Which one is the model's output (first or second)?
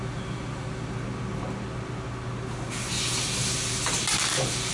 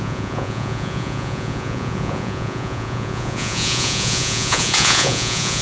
second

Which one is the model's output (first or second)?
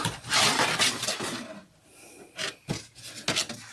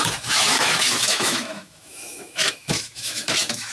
second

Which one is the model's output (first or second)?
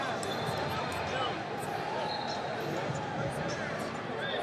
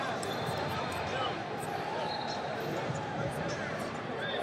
second